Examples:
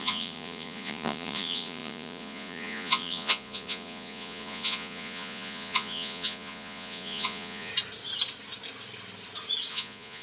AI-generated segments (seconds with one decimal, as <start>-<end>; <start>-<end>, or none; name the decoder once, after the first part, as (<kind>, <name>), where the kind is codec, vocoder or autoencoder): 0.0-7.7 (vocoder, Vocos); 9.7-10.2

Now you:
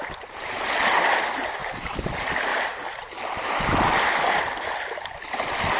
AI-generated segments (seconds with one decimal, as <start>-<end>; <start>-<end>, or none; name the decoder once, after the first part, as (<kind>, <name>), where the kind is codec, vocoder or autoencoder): 1.6-2.1 (vocoder, BigVGAN v2)

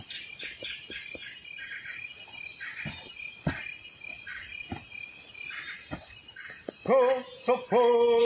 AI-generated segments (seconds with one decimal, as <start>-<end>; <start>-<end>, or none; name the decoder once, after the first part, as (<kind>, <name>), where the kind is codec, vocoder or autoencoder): none

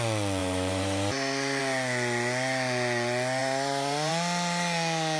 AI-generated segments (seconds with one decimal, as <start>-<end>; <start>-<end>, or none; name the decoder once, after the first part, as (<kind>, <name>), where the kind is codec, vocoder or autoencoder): 0.4-1.6 (vocoder, BigVGAN v2); 3.4-4.1

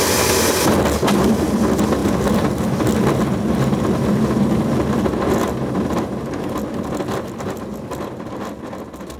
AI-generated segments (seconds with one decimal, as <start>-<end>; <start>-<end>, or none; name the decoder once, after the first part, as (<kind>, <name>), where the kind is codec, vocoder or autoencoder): none